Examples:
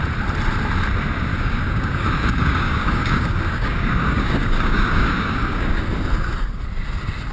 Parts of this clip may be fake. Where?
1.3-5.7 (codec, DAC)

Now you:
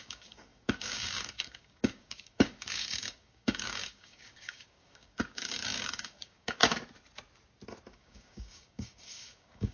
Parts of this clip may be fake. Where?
0.0-6.6 (codec, DAC); 7.9-9.7

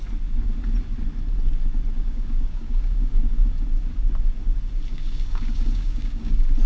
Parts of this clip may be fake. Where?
2.0-3.5 (codec, DAC); 4.9-6.3

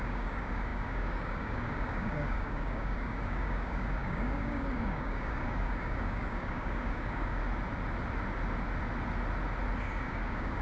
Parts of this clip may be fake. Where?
0.0-7.4 (codec, DAC); 9.8-10.6

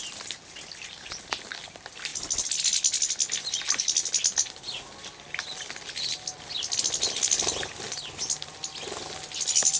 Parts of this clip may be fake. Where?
none

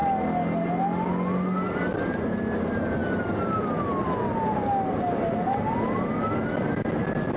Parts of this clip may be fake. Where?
none